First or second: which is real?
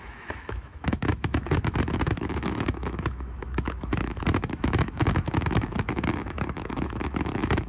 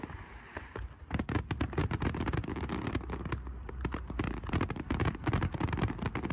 second